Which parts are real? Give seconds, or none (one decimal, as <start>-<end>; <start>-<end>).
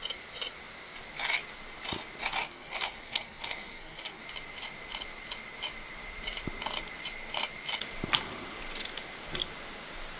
0.0-2.4; 4.2-10.2